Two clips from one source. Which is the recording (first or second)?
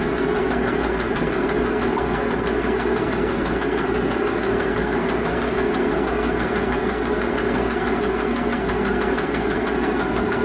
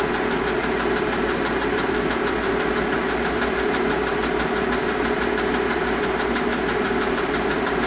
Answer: second